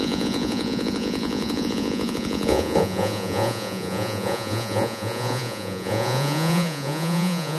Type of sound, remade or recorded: remade